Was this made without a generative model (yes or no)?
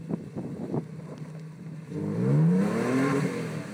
yes